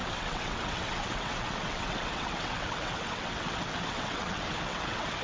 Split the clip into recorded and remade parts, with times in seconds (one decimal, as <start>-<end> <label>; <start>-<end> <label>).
0.0-5.2 remade